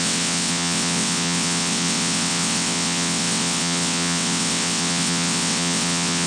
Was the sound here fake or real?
fake